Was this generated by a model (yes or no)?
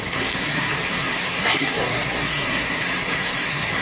yes